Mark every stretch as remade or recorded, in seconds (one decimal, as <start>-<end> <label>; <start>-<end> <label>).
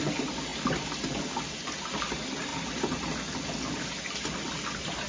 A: 0.0-2.5 recorded; 2.5-3.2 remade; 3.2-5.1 recorded